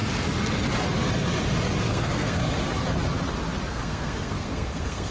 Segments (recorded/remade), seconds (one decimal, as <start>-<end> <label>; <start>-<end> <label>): 0.0-1.8 recorded; 1.8-2.4 remade; 2.4-3.7 recorded; 3.7-5.1 remade